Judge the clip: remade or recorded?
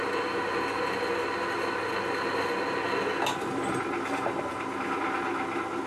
recorded